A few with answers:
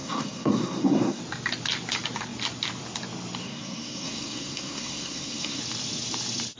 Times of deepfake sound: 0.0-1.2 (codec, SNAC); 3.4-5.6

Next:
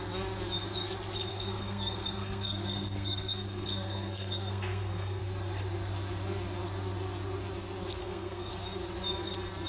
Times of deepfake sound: 1.3-5.2 (codec, SNAC); 8.0-8.5

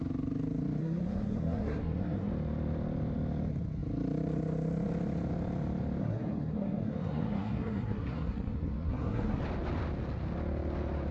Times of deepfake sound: 0.8-2.3 (codec, SNAC); 6.0-9.4

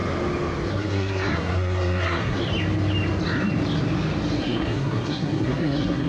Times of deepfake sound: 0.7-2.4 (codec, SNAC); 4.4-6.1

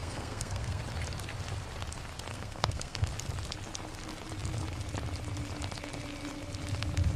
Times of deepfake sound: 0.0-0.8 (codec, SNAC); 2.3-3.1

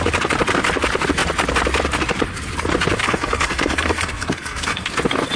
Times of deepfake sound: 3.0-4.9 (codec, SNAC)

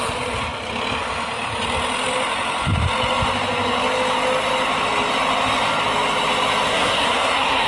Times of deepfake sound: 6.7-7.7 (codec, SNAC)